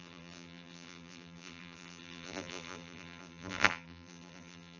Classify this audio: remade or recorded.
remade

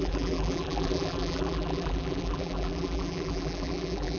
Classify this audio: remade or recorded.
remade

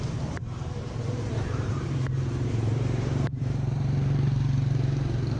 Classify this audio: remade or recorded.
remade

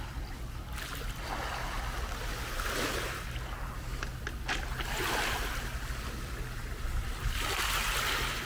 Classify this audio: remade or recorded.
recorded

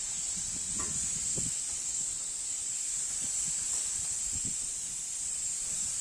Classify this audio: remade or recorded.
remade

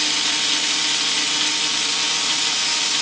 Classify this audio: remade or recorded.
recorded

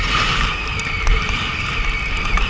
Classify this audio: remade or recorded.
remade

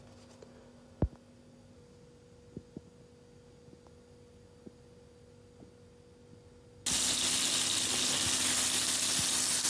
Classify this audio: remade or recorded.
recorded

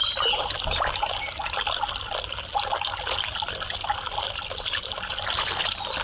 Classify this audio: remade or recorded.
recorded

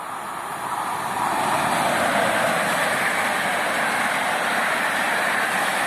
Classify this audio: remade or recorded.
recorded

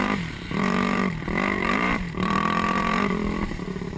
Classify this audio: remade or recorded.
remade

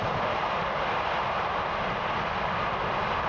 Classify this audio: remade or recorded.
remade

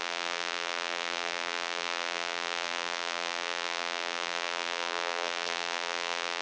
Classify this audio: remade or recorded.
remade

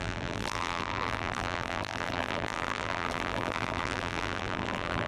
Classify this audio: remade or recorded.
remade